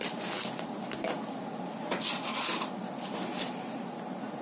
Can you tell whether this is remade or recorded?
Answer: recorded